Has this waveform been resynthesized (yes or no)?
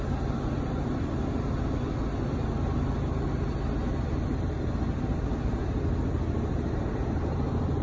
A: no